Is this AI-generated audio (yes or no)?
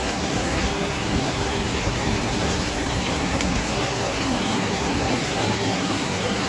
yes